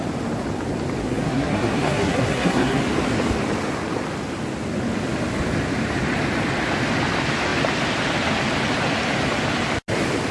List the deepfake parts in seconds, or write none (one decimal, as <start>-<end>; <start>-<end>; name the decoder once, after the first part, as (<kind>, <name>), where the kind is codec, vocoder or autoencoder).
1.0-2.8 (codec, SNAC)